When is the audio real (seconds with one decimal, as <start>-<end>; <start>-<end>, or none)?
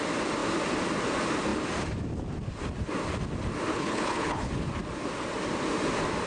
0.0-3.7; 4.5-6.3